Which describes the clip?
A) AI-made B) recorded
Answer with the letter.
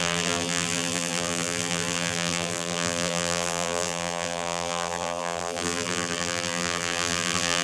A